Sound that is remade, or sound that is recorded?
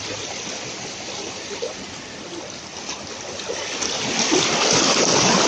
remade